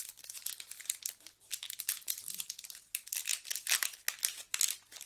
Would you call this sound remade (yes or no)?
no